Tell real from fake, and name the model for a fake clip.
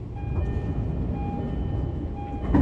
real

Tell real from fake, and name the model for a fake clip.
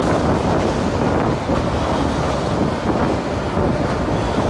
real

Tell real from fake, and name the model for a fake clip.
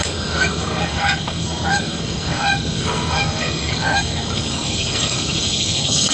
fake, codec, SNAC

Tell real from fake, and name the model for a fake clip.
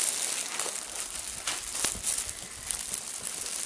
real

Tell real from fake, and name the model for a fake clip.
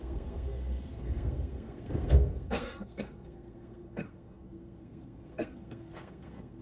fake, codec, SNAC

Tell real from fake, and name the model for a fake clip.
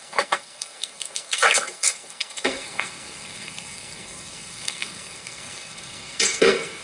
fake, codec, SNAC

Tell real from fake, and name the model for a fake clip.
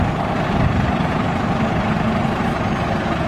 real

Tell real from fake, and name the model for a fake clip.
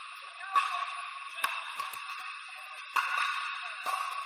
real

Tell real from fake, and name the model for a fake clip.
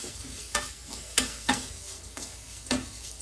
fake, codec, SNAC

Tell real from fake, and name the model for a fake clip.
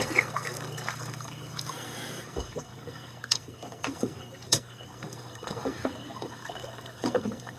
fake, codec, SNAC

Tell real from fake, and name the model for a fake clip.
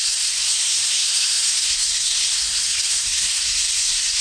fake, codec, SNAC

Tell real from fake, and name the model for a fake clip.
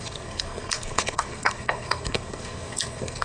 fake, codec, SNAC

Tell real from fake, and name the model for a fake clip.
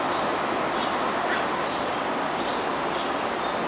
real